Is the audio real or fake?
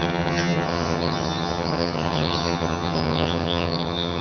fake